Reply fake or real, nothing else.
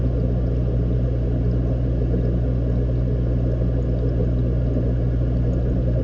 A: real